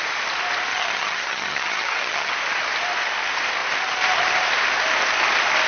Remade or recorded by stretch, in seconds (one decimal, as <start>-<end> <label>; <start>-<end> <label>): 0.0-0.7 recorded; 0.7-2.3 remade; 2.3-5.7 recorded